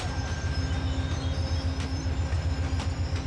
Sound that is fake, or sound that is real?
real